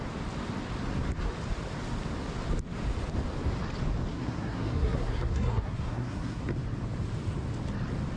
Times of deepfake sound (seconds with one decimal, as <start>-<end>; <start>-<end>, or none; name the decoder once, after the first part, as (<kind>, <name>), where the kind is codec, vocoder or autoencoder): 4.1-6.4 (codec, SNAC)

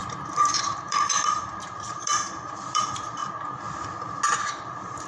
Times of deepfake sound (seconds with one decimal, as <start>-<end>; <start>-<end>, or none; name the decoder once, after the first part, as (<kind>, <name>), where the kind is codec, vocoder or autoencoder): 0.0-3.2 (vocoder, BigVGAN v2); 4.6-5.1